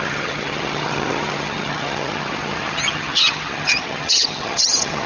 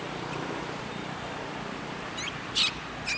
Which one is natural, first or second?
second